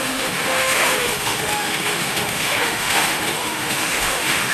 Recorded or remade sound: remade